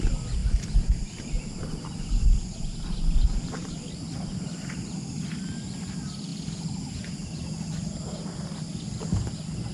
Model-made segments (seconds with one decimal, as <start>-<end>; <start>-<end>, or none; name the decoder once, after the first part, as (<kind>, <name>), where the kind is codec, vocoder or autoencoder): 0.4-1.2 (vocoder, BigVGAN v2)